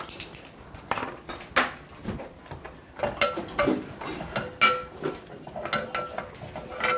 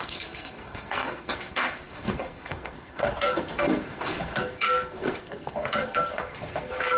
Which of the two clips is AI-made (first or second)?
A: second